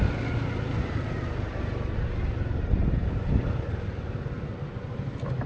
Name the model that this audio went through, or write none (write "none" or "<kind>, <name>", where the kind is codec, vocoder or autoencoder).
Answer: none